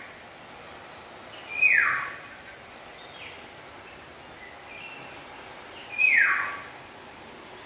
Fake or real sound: real